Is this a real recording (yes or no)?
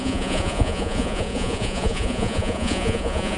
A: no